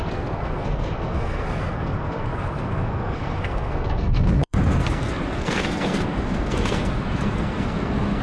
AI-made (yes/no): yes